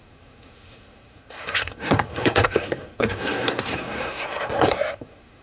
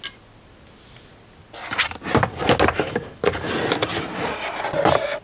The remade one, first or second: first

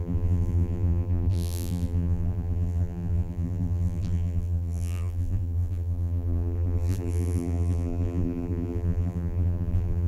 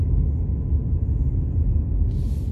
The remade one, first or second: first